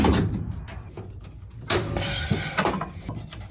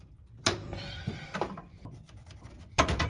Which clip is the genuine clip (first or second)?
first